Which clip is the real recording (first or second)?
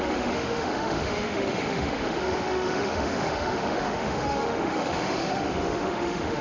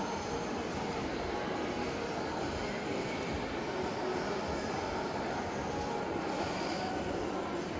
second